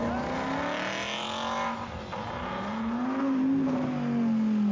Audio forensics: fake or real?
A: real